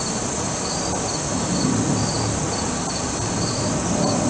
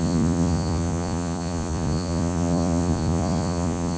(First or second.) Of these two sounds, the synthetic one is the second